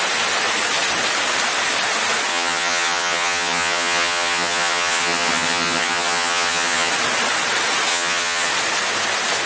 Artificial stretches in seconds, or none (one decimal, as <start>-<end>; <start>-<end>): 2.3-6.9; 7.9-8.5